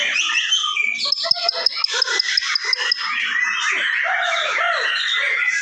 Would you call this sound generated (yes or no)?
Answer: no